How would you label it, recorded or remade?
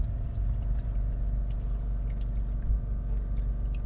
recorded